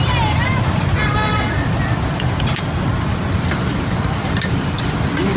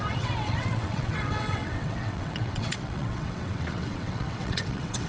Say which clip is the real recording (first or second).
first